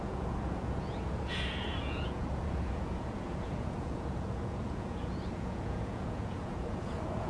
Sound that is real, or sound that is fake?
fake